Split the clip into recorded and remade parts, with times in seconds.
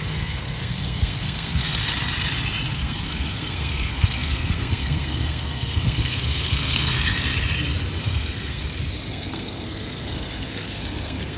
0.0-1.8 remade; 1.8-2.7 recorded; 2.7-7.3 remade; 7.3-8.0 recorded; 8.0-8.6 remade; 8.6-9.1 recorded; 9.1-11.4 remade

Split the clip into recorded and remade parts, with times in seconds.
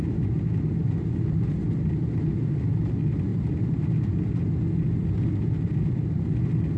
0.0-6.8 recorded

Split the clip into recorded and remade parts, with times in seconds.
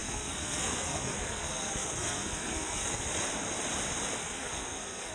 0.0-3.1 remade; 3.1-4.2 recorded; 4.2-5.1 remade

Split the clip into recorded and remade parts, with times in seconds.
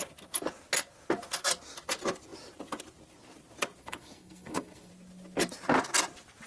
0.0-3.8 recorded; 3.8-4.9 remade; 4.9-6.5 recorded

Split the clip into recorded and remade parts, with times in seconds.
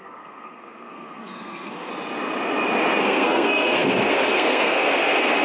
0.0-1.9 remade; 1.9-3.0 recorded; 3.0-5.4 remade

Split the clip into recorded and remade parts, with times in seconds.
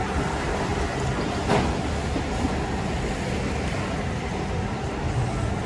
0.0-5.7 recorded